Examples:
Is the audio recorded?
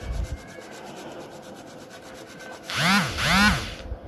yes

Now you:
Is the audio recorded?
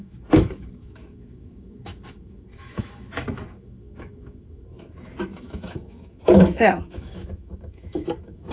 no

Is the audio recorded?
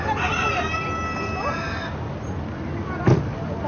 yes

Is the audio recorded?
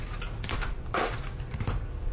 yes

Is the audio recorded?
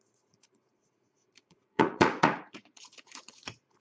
no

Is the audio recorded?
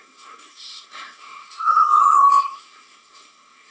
no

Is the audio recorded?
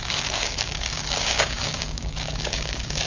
no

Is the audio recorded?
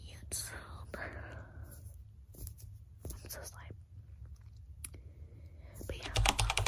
yes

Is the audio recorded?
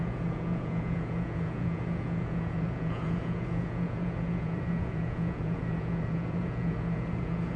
no